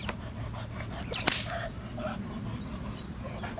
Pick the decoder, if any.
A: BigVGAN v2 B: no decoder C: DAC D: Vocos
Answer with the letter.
B